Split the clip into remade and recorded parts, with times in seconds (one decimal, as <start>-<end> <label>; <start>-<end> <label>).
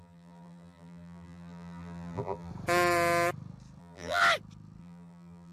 0.0-2.5 remade; 2.5-3.8 recorded; 3.8-4.2 remade; 4.2-4.8 recorded; 4.8-5.5 remade